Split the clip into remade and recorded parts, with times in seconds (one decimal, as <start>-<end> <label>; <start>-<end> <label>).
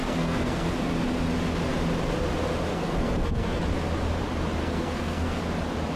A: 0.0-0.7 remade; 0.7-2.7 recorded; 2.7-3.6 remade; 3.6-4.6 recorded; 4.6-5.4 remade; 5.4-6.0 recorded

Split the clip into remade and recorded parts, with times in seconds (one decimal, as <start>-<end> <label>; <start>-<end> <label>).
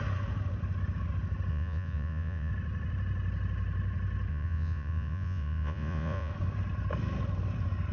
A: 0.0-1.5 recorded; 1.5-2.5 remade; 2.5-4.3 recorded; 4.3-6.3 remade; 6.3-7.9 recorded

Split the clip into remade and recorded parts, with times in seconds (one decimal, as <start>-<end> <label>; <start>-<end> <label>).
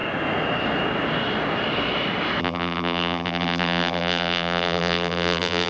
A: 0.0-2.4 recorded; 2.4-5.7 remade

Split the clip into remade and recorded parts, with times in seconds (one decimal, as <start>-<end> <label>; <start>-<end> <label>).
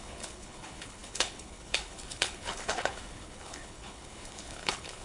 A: 0.0-5.0 remade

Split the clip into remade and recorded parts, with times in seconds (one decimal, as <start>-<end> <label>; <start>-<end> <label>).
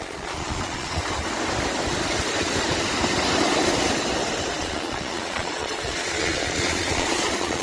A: 0.0-1.0 remade; 1.0-4.6 recorded; 4.6-7.6 remade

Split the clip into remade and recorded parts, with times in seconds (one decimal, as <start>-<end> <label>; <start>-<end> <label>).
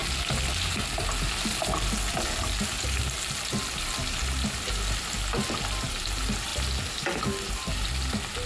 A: 0.0-8.5 recorded